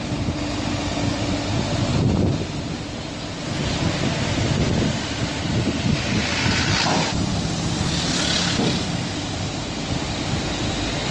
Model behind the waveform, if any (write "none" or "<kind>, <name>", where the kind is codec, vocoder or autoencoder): none